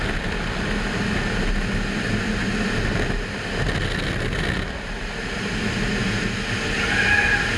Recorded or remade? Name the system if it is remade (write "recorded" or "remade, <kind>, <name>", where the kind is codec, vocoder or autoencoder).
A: recorded